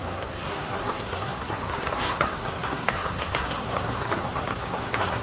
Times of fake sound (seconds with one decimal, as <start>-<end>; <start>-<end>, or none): 0.0-5.2